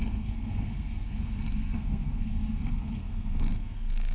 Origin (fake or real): fake